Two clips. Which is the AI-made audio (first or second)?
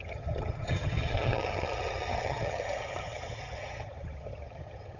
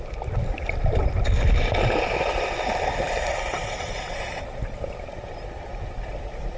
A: first